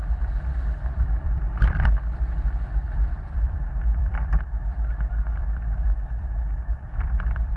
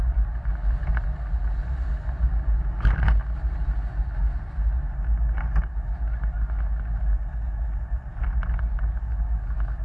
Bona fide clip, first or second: second